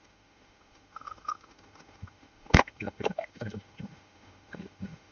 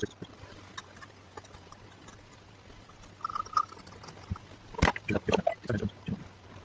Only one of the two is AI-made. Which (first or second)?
first